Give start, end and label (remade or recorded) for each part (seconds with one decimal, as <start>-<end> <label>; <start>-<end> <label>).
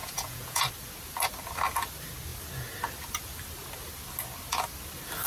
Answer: 0.0-0.7 remade; 0.7-5.3 recorded